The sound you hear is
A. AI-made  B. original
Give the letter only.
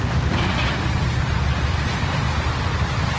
B